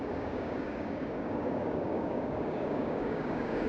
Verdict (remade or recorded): remade